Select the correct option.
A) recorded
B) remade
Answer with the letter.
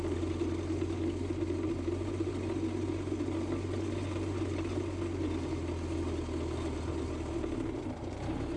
A